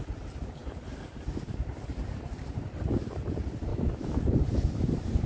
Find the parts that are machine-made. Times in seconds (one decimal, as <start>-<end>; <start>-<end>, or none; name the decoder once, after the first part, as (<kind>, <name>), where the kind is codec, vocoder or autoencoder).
3.7-4.2 (autoencoder, DAC-VAE)